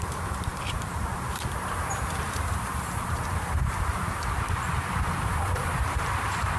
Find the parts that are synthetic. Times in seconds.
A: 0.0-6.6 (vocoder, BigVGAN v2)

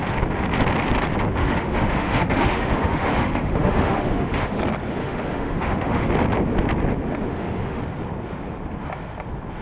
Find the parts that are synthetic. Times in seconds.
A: 1.4-4.6 (autoencoder, DAC-VAE); 5.0-6.1; 7.3-7.8

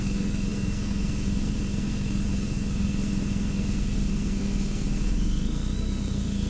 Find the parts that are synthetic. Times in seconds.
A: 0.0-6.5 (codec, SNAC)

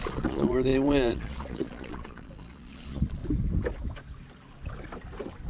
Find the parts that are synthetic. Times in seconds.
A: 0.0-3.2 (vocoder, Vocos)

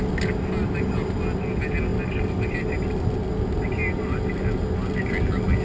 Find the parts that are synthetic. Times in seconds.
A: none

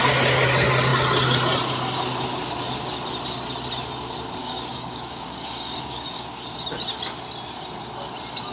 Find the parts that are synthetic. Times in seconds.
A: 4.4-6.4 (codec, DAC)